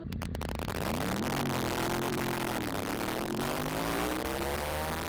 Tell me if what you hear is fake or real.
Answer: fake